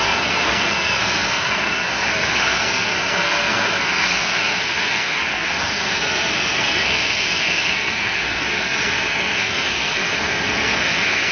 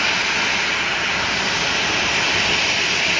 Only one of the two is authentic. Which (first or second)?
second